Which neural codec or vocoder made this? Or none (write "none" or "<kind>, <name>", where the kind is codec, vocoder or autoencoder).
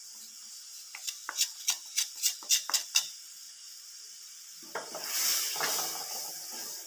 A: none